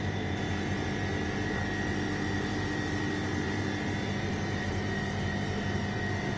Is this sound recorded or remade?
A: recorded